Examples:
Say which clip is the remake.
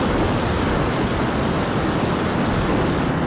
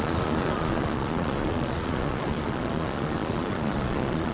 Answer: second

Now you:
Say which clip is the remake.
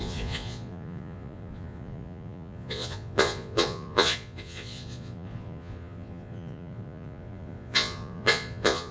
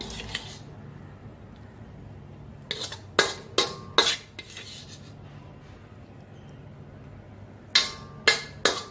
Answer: first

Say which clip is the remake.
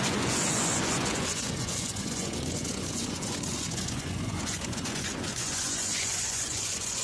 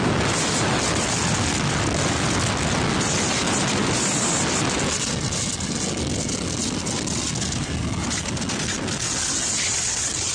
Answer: first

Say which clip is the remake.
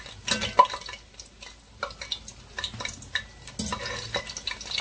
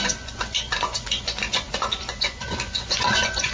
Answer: second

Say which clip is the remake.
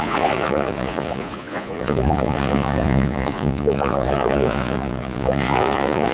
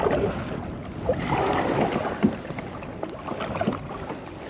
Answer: first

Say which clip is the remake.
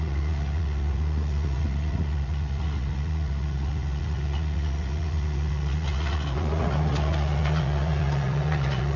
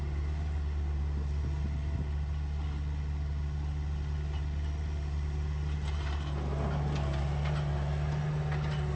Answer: first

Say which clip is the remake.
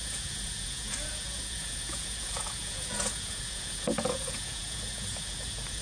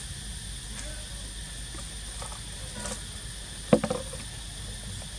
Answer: first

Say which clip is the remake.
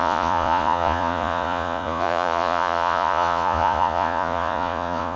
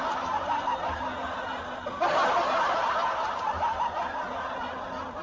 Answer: first